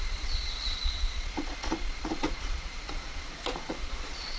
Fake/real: fake